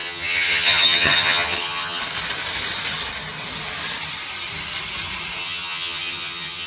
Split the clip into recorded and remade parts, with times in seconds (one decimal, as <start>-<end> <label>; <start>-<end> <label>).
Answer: 0.0-2.0 remade; 2.0-5.4 recorded; 5.4-6.7 remade